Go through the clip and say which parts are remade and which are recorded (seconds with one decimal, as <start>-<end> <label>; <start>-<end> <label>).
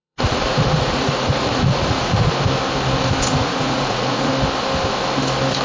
0.0-2.3 remade; 2.3-3.3 recorded; 3.3-4.3 remade; 4.3-5.6 recorded